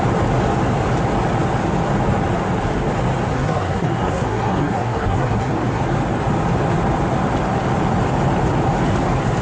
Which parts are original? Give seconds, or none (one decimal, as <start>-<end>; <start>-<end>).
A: 0.0-3.3; 5.8-9.4